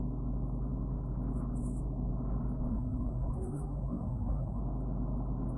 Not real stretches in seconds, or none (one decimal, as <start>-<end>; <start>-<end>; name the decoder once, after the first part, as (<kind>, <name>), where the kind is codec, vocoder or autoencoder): 2.7-4.6 (codec, SNAC)